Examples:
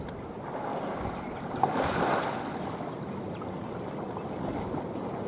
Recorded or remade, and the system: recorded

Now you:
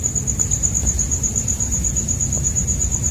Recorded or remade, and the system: remade, vocoder, BigVGAN v2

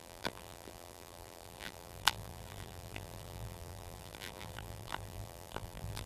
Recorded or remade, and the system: remade, vocoder, BigVGAN v2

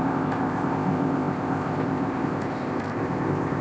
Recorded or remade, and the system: remade, codec, ZipCodec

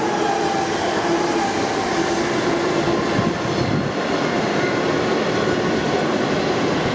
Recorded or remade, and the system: recorded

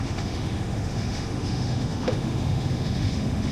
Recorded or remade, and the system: remade, autoencoder, DAC-VAE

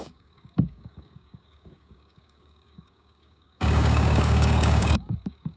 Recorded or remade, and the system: remade, codec, DAC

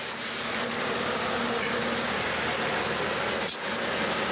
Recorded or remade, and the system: recorded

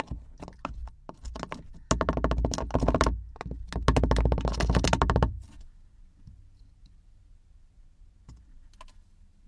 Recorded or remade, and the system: recorded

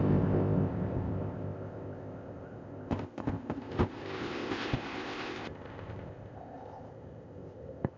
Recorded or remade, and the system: remade, codec, ZipCodec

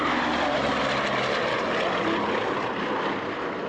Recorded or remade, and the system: recorded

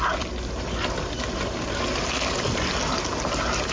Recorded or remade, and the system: recorded